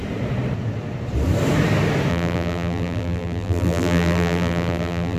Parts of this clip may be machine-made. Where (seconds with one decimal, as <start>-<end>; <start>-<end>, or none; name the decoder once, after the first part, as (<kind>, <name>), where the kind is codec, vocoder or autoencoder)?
2.1-5.2 (vocoder, BigVGAN v2)